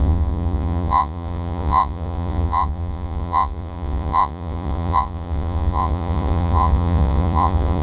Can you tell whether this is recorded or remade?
remade